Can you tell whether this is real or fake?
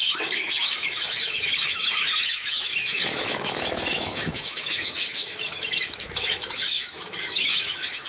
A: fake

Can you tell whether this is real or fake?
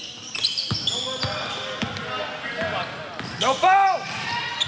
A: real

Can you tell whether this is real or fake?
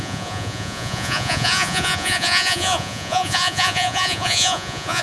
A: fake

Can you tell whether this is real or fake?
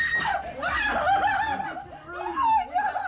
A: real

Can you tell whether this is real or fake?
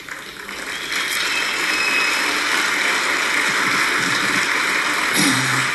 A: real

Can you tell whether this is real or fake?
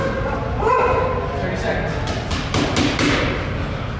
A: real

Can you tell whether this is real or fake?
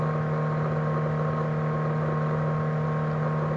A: real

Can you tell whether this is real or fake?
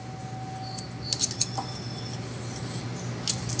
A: real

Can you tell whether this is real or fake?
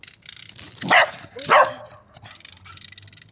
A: real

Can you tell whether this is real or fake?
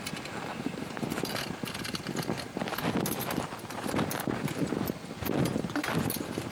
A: real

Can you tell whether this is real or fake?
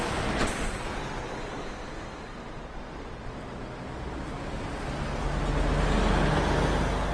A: real